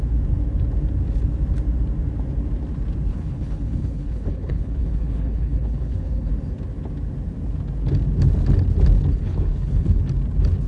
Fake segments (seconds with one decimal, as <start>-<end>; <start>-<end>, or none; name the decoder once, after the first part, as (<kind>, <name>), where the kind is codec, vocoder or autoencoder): 3.1-6.3 (codec, HILCodec); 9.1-10.0